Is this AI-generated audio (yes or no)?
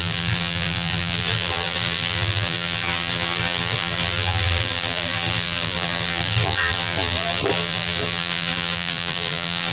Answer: yes